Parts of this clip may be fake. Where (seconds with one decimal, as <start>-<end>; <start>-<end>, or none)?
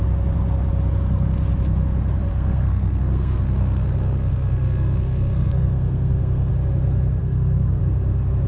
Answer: 2.3-6.5; 7.2-7.8